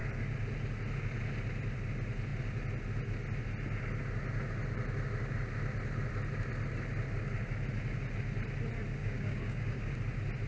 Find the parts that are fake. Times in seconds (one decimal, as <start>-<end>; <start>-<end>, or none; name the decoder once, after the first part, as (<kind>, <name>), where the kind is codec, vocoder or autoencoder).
9.0-9.9 (codec, DAC)